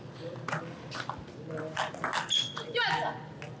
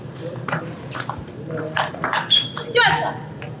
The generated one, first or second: second